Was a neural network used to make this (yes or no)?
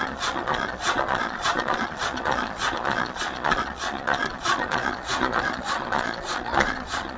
yes